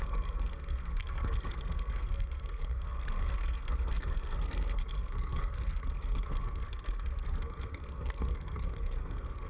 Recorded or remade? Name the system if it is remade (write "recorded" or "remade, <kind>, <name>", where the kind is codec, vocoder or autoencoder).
remade, codec, SNAC